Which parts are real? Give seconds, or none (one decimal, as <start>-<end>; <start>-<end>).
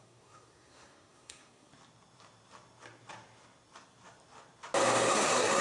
1.7-5.1